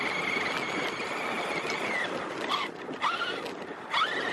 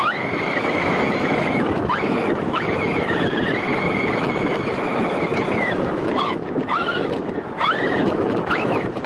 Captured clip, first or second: first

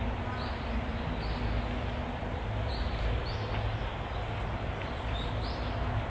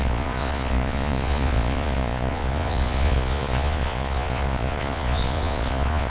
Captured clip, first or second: first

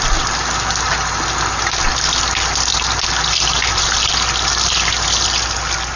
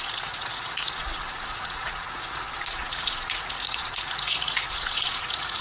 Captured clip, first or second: first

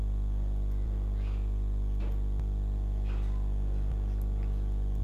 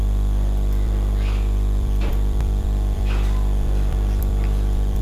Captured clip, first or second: first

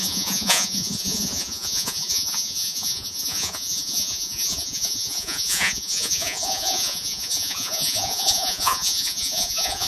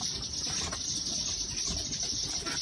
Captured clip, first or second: second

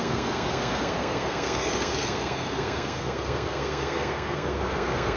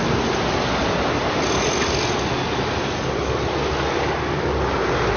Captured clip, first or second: second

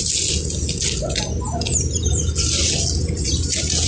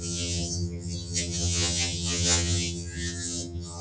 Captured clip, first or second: first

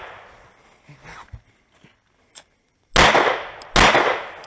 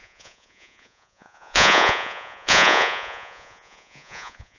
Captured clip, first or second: first